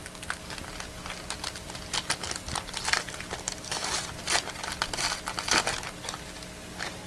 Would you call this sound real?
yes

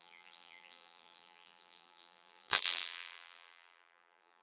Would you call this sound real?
no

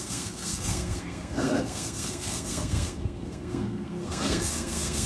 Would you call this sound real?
no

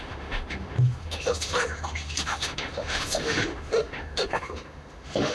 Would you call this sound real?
no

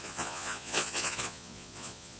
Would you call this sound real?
no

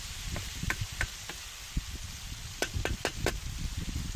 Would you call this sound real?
yes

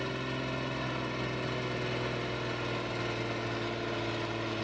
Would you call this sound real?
yes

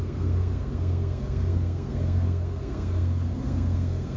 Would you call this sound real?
no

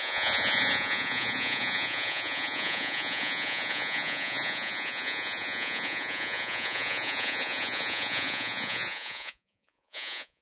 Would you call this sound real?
no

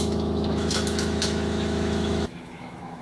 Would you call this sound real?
no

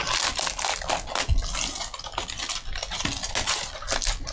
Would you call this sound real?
yes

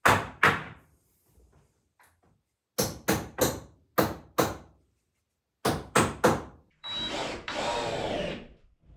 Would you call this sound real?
yes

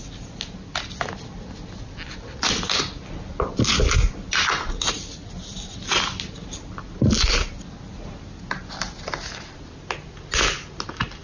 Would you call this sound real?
yes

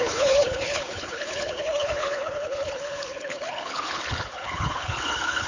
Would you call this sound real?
no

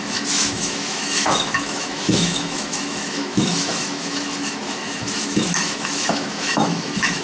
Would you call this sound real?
no